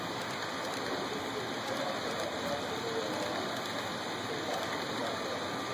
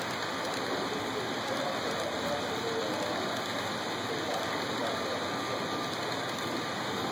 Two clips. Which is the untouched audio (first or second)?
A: second